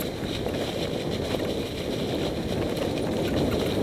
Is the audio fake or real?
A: real